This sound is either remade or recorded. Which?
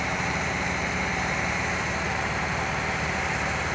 remade